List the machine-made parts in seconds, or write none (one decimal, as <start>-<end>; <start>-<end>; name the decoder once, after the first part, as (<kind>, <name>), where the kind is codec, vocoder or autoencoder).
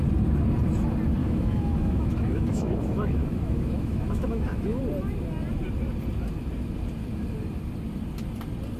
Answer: 1.2-4.8 (autoencoder, DAC-VAE)